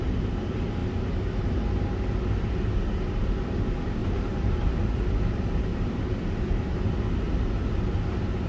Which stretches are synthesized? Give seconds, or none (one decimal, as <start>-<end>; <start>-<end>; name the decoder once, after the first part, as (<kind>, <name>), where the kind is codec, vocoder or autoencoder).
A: 4.0-5.1 (vocoder, BigVGAN v2); 5.7-6.9